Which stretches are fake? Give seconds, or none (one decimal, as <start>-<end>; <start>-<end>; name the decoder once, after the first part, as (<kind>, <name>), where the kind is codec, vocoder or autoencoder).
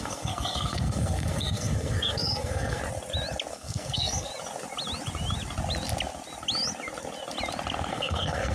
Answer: 0.0-2.8 (codec, SNAC); 3.5-4.3; 7.9-8.5